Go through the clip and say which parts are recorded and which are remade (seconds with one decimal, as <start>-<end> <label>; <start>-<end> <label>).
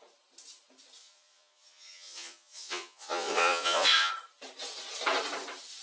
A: 0.0-1.0 recorded; 1.0-4.1 remade; 4.1-5.8 recorded